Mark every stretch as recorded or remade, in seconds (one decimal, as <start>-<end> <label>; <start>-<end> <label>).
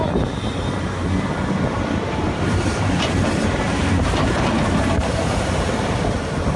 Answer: 0.0-2.2 recorded; 2.2-6.6 remade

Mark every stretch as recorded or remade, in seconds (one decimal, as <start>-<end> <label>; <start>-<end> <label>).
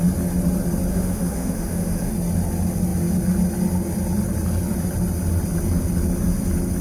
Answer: 0.0-0.9 recorded; 0.9-2.1 remade; 2.1-6.8 recorded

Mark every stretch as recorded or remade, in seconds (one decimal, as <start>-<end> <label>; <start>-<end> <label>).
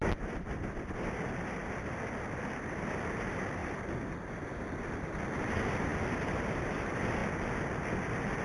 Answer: 0.0-7.2 remade; 7.2-8.4 recorded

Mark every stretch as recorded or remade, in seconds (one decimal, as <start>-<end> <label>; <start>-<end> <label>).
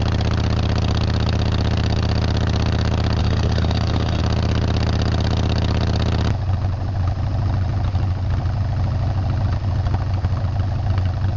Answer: 0.0-3.2 recorded; 3.2-4.2 remade; 4.2-11.4 recorded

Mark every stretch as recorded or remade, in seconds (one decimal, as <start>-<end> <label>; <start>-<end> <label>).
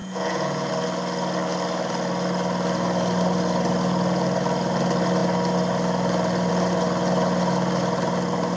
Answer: 0.0-0.7 remade; 0.7-8.6 recorded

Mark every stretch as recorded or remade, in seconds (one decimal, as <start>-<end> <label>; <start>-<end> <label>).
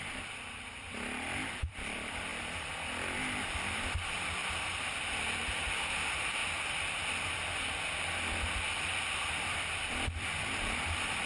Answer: 0.0-2.3 remade; 2.3-3.4 recorded; 3.4-6.4 remade; 6.4-9.9 recorded; 9.9-11.3 remade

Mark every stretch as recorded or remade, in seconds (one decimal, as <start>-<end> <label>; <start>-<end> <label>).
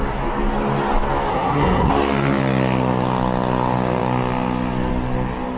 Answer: 0.0-1.3 recorded; 1.3-1.9 remade; 1.9-5.6 recorded